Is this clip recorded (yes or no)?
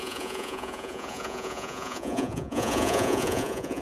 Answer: no